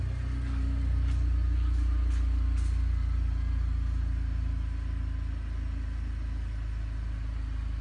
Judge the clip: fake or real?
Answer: real